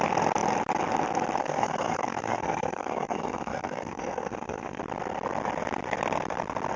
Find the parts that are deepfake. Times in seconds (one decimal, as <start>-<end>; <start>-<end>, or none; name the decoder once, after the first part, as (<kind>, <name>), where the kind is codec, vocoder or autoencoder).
1.4-4.8 (codec, SNAC)